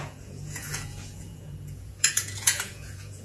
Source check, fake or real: fake